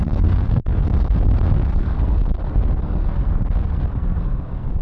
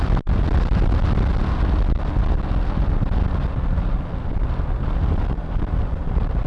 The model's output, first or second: first